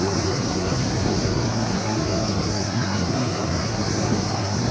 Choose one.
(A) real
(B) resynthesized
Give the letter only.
B